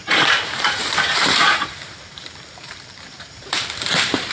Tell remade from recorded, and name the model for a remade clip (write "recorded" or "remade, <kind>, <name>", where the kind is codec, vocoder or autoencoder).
remade, vocoder, BigVGAN v2